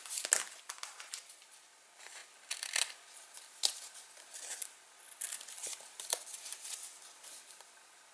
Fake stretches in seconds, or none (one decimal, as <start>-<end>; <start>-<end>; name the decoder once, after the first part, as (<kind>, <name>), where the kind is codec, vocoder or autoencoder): none